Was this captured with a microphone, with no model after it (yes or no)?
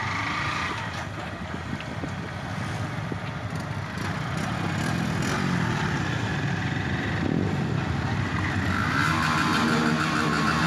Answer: yes